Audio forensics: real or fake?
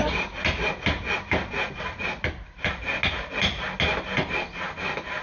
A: real